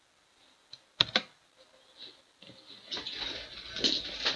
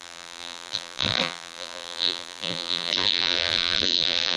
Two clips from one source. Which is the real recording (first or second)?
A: first